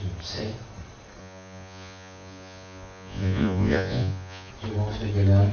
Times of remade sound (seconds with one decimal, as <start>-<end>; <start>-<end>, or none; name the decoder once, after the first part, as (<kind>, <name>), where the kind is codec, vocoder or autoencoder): 1.2-4.5 (vocoder, Vocos)

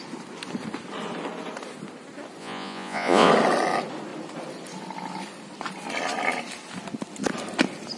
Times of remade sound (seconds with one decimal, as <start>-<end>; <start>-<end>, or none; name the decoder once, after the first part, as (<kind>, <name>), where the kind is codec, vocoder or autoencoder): 2.4-3.3 (vocoder, Vocos)

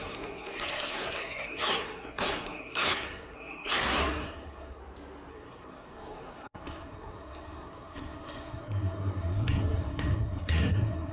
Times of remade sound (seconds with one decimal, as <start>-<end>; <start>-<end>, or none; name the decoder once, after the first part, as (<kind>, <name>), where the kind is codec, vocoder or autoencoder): 0.0-4.8 (codec, SNAC); 5.3-11.1

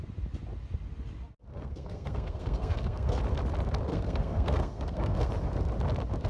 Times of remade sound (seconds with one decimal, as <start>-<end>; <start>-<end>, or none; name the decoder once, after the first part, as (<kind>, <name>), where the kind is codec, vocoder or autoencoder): 1.5-3.2 (codec, SNAC); 3.9-5.3

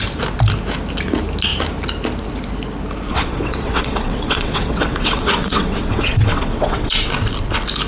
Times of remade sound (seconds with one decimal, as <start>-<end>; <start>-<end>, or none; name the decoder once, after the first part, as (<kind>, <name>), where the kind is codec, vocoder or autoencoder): 3.1-6.9 (vocoder, WaveNeXt)

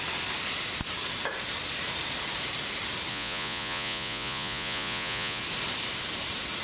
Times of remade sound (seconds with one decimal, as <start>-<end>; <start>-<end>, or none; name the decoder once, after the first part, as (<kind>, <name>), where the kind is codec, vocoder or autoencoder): 3.1-5.4 (vocoder, Vocos)